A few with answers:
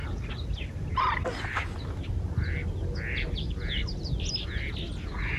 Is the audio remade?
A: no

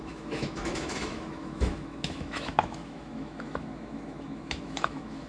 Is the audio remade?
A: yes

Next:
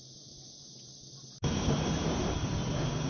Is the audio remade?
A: no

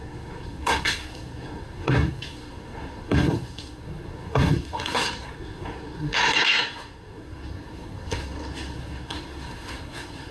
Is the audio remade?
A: yes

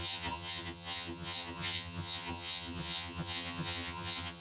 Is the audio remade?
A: yes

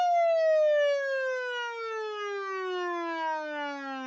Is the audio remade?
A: no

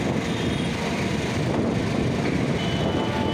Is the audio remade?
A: no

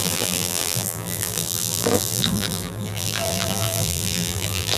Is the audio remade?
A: yes